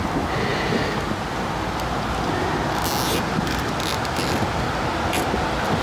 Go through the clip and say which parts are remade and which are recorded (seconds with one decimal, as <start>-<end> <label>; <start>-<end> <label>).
0.0-5.8 recorded

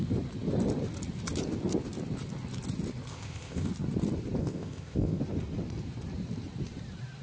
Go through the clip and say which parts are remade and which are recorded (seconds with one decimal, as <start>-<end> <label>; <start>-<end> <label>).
0.0-3.1 recorded; 3.1-3.7 remade; 3.7-4.4 recorded; 4.4-5.2 remade; 5.2-7.2 recorded

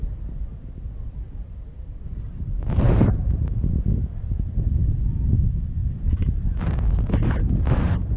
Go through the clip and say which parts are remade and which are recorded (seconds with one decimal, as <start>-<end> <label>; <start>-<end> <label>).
0.0-4.8 recorded; 4.8-5.3 remade; 5.3-5.8 recorded; 5.8-6.9 remade; 6.9-8.2 recorded

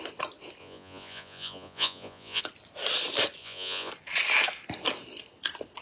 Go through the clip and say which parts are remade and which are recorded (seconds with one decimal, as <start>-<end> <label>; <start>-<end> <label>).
0.0-0.6 recorded; 0.6-2.4 remade; 2.4-3.4 recorded; 3.4-3.9 remade; 3.9-5.8 recorded